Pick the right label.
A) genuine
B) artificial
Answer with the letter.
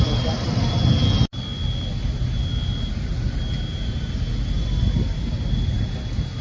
A